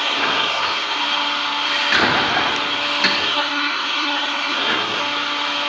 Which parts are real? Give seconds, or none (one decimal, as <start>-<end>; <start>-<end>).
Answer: 1.0-3.2; 5.0-5.7